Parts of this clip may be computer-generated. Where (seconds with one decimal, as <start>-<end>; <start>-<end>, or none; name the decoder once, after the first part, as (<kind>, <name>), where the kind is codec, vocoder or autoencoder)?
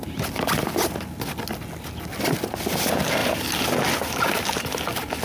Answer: none